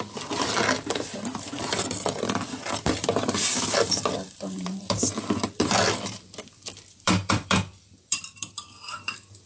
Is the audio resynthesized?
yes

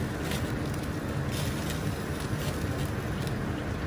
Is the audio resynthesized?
no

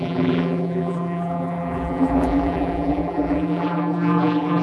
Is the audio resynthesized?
yes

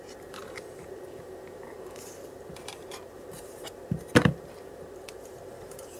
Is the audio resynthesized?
yes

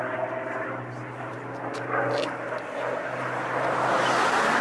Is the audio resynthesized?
no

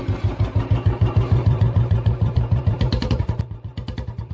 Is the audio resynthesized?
yes